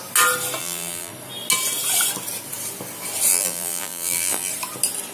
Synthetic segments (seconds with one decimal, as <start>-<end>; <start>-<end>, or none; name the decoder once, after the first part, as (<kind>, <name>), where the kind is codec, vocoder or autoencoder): 0.6-1.1 (vocoder, BigVGAN v2); 3.3-4.5